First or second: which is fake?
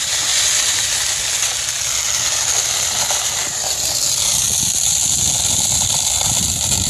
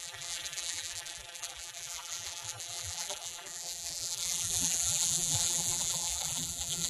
second